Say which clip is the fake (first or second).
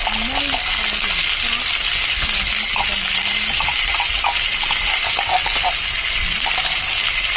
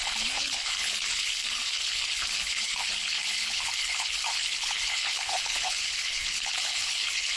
second